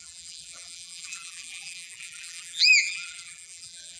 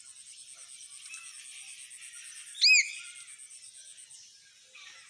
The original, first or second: second